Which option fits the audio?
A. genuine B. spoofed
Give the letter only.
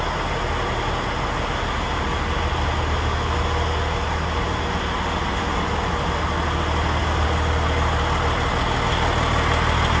A